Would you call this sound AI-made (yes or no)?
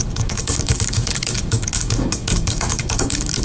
yes